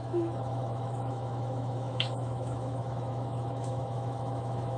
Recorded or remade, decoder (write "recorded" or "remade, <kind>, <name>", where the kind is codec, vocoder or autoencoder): remade, autoencoder, DAC-VAE